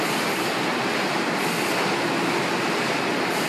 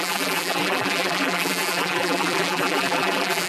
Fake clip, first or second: second